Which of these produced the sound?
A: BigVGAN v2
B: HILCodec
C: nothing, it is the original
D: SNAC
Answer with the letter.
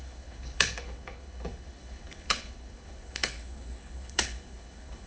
B